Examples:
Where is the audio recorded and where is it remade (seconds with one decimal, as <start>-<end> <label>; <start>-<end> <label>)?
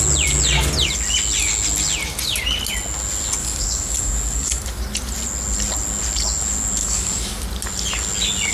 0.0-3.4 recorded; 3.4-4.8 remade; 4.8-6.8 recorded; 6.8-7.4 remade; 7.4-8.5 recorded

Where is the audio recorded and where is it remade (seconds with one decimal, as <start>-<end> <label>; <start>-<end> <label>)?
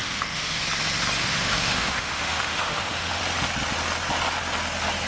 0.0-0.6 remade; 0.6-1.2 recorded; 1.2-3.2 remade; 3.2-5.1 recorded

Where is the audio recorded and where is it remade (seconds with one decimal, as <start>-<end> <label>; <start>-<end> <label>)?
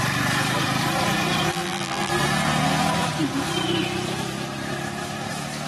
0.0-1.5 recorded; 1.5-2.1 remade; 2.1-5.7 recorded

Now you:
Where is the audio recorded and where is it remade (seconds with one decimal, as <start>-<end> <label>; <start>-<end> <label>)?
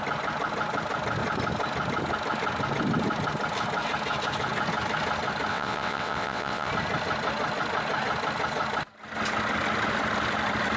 0.0-5.5 recorded; 5.5-6.7 remade; 6.7-10.8 recorded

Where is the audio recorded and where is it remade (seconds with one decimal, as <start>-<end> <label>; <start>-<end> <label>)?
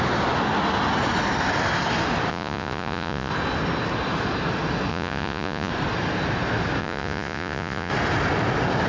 0.0-2.3 recorded; 2.3-3.3 remade; 3.3-4.9 recorded; 4.9-5.7 remade; 5.7-6.8 recorded; 6.8-7.9 remade; 7.9-8.9 recorded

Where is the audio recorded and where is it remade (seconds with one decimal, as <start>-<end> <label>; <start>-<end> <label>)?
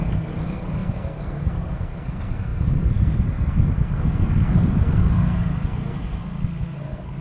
0.0-7.2 remade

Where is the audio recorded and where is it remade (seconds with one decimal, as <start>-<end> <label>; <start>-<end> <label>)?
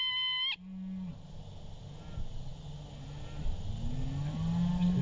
0.0-5.0 recorded